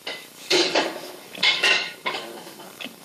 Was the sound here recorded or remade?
remade